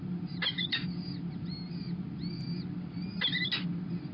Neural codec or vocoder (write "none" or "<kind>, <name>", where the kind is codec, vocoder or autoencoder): none